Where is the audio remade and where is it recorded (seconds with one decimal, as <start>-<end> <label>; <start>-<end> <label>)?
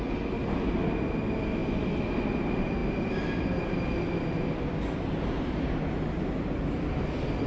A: 0.0-7.5 recorded